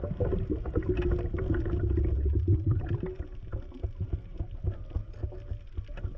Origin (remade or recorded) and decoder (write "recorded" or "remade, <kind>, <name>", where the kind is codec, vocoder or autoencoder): recorded